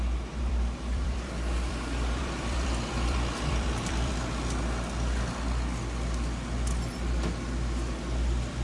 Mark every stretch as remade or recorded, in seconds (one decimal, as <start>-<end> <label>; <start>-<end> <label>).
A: 0.0-0.4 recorded; 0.4-4.1 remade; 4.1-8.6 recorded